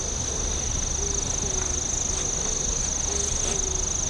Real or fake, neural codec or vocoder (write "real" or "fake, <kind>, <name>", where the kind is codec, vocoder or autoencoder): real